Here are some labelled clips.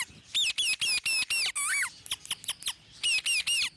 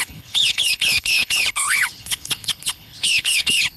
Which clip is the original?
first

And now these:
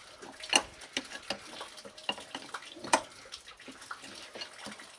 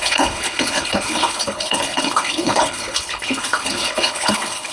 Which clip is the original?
first